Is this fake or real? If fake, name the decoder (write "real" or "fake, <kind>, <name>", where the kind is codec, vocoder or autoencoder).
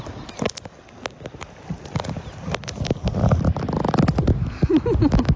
real